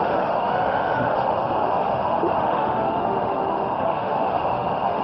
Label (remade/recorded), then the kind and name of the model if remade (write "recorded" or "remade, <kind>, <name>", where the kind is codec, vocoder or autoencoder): remade, autoencoder, DAC-VAE